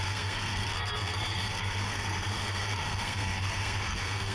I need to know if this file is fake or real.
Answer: fake